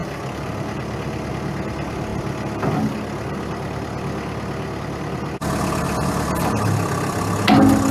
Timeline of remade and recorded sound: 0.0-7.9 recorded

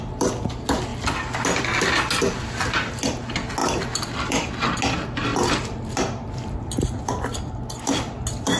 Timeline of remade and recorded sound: 0.0-3.6 recorded; 3.6-4.5 remade; 4.5-5.3 recorded; 5.3-7.5 remade; 7.5-8.6 recorded

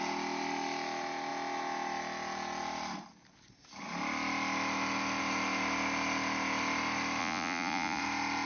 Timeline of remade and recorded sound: 0.0-7.2 recorded; 7.2-8.0 remade; 8.0-8.5 recorded

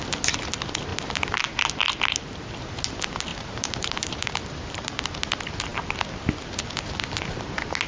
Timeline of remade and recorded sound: 0.0-0.9 recorded; 0.9-1.6 remade; 1.6-3.3 recorded; 3.3-5.0 remade; 5.0-7.9 recorded

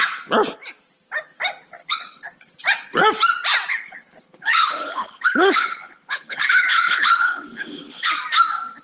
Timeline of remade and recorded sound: 0.0-1.8 recorded; 1.8-2.5 remade; 2.5-3.7 recorded; 3.7-8.1 remade; 8.1-8.8 recorded

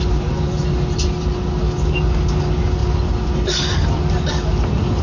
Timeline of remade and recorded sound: 0.0-5.0 recorded

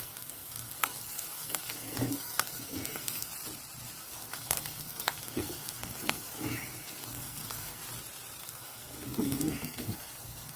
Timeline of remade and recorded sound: 0.0-3.3 remade; 3.3-4.0 recorded; 4.0-7.8 remade; 7.8-8.4 recorded; 8.4-10.6 remade

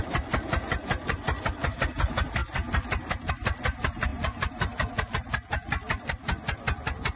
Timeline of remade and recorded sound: 0.0-7.2 recorded